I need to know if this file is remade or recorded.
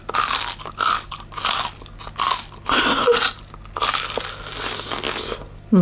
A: recorded